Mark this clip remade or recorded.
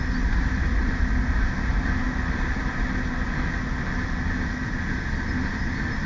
recorded